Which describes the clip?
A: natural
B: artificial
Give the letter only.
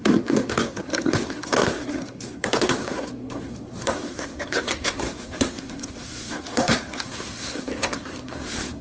B